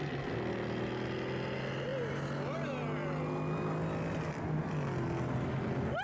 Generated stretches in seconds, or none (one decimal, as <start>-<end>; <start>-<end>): none